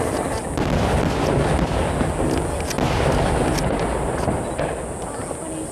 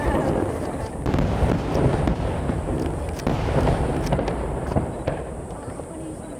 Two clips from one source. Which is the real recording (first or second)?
first